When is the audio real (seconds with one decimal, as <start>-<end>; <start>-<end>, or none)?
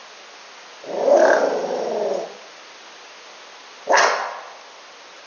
0.0-5.3